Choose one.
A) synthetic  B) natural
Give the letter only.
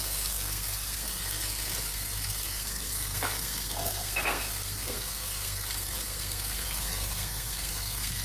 A